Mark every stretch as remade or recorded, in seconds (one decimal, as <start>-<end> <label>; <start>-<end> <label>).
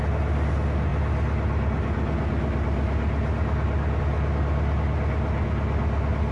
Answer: 0.0-6.3 recorded